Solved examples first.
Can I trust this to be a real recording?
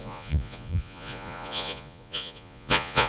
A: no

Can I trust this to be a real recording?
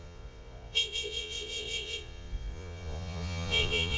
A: no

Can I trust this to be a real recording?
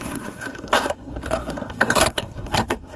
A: no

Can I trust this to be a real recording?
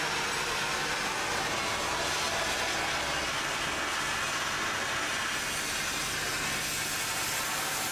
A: yes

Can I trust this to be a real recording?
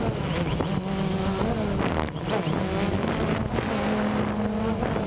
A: yes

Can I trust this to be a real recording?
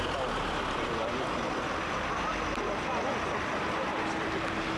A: yes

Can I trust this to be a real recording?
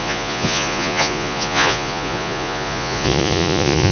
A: no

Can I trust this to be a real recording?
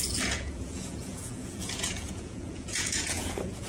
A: no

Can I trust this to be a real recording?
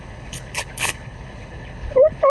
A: no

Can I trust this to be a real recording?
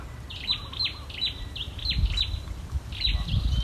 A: yes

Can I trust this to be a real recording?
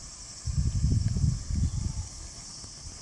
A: yes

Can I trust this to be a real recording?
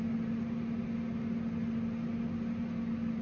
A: yes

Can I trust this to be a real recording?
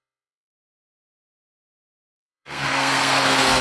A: no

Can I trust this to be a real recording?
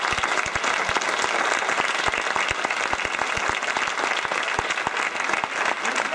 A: yes